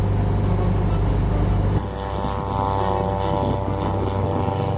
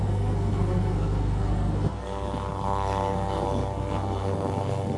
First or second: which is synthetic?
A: second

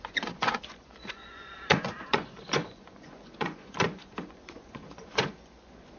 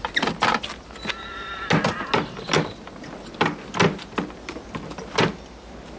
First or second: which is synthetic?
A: first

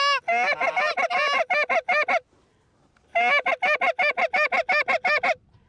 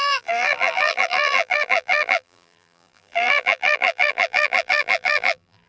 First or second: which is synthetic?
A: second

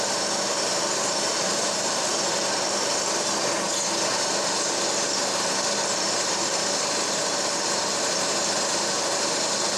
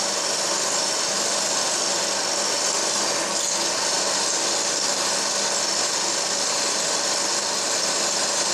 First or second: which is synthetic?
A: first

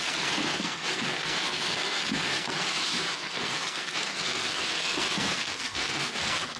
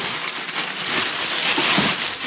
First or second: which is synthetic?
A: first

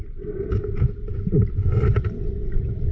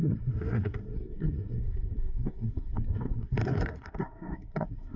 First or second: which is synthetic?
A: second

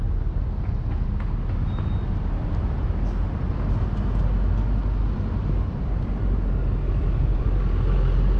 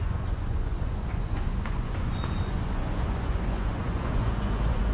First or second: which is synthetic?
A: second